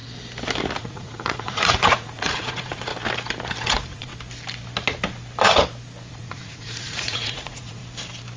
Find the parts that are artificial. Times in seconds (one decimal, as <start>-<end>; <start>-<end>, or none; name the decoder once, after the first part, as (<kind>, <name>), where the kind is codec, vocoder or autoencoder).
0.8-2.9 (vocoder, Vocos); 3.6-4.1; 6.1-7.8